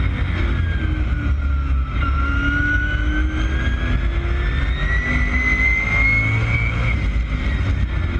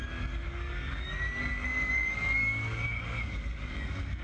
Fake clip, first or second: second